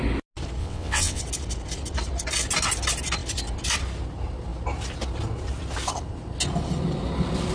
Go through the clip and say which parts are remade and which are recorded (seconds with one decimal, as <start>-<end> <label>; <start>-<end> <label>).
0.0-0.6 recorded; 0.6-1.2 remade; 1.2-7.5 recorded